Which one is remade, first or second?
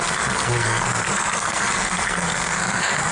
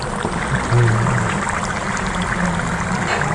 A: first